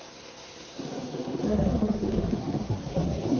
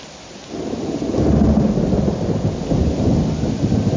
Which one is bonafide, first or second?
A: second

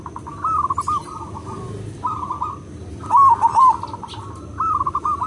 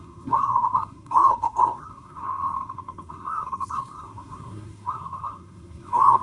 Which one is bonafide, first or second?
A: first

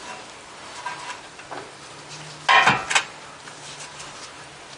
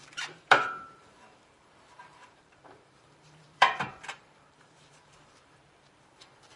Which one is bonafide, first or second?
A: first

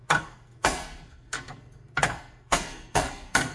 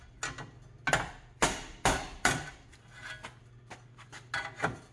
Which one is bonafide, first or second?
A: second